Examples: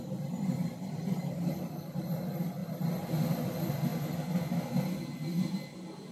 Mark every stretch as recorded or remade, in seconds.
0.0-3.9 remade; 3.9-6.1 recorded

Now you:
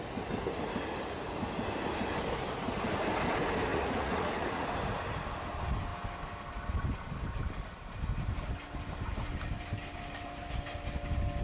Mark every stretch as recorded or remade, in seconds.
0.0-3.7 recorded; 3.7-4.7 remade; 4.7-11.4 recorded

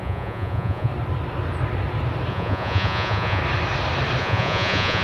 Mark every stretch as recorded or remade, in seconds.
0.0-0.9 remade; 0.9-2.3 recorded; 2.3-3.4 remade; 3.4-4.2 recorded; 4.2-5.0 remade

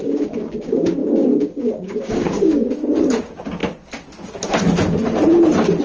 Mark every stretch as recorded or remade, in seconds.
0.0-3.6 remade; 3.6-5.8 recorded

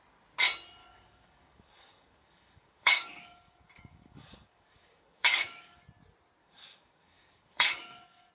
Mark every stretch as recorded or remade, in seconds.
0.0-0.8 recorded; 0.8-5.8 remade; 5.8-6.4 recorded; 6.4-8.3 remade

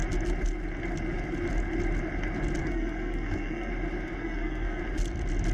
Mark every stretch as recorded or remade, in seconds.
0.0-2.6 recorded; 2.6-3.7 remade; 3.7-4.2 recorded; 4.2-4.8 remade; 4.8-5.5 recorded

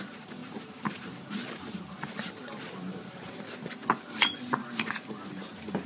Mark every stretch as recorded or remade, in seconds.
0.0-0.4 recorded; 0.4-2.3 remade; 2.3-5.9 recorded